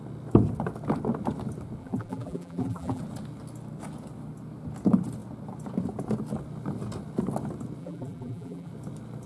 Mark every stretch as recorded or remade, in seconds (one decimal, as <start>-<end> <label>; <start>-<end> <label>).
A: 0.0-1.8 recorded; 1.8-3.0 remade; 3.0-7.8 recorded; 7.8-8.7 remade; 8.7-9.3 recorded